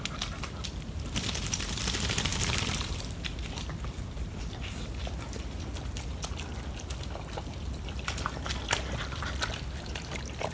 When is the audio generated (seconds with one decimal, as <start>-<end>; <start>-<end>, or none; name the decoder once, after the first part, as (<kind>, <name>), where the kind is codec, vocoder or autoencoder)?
none